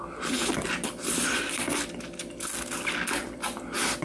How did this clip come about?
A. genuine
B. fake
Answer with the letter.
A